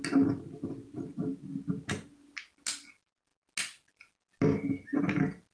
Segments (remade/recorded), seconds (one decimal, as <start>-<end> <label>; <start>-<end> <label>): 0.0-5.5 recorded